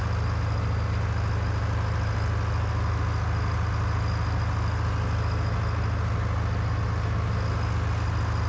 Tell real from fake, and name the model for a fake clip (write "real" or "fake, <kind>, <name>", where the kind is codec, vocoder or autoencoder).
real